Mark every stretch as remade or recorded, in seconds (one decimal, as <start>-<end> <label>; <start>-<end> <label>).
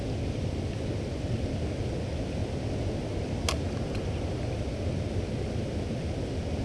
0.0-6.6 recorded